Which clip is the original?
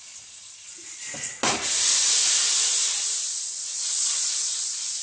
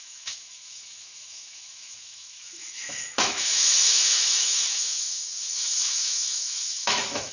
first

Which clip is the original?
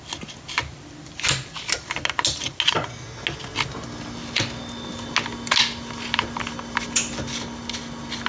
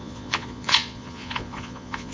first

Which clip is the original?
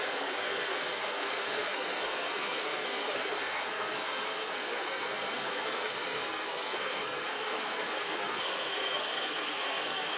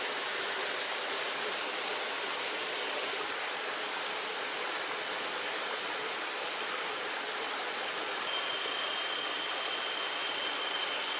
second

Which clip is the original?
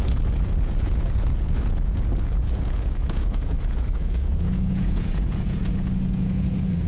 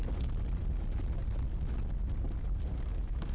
second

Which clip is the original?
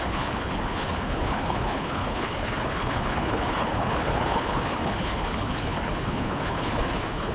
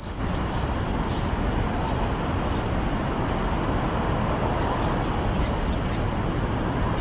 second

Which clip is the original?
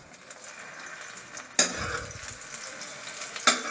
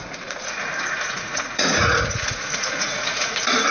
first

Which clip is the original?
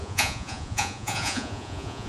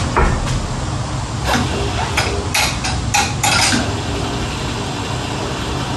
second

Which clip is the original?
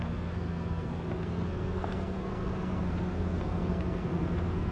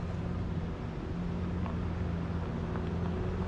second